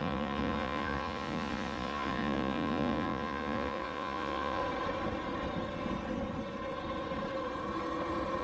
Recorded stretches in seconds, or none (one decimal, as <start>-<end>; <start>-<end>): 4.6-8.4